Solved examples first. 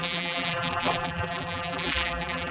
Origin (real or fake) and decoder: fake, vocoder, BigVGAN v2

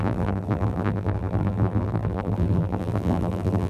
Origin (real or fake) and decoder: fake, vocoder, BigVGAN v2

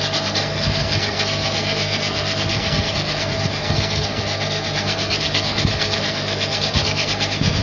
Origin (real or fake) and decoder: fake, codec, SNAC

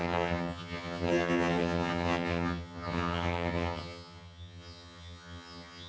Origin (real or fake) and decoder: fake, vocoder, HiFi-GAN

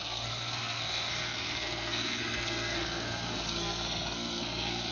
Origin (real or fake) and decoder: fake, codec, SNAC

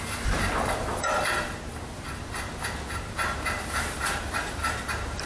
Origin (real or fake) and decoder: fake, vocoder, BigVGAN v2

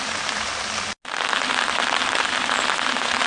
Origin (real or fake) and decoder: real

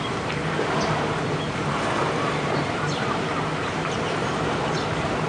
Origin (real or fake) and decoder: fake, vocoder, BigVGAN v2